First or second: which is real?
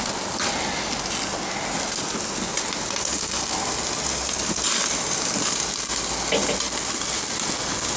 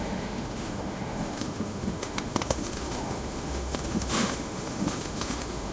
first